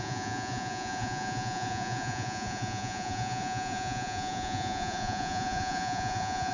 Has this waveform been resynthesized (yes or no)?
yes